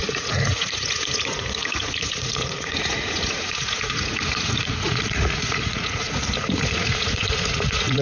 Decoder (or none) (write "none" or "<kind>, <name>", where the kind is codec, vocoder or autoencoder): vocoder, Vocos